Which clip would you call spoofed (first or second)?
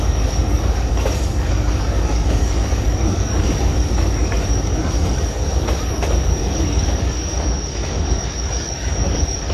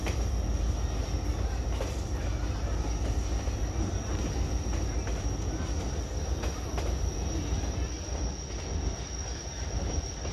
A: first